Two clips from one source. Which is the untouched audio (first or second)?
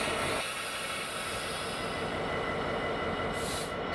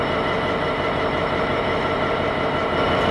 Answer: first